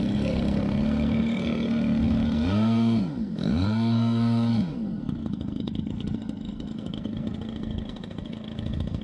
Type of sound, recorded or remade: remade